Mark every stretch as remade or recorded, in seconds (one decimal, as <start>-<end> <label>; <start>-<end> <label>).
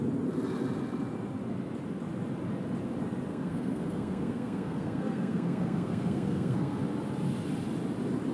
0.0-3.3 recorded; 3.3-6.8 remade; 6.8-8.3 recorded